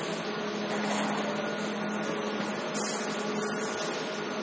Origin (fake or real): real